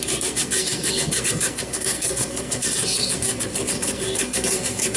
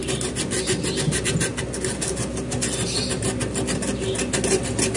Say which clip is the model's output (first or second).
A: first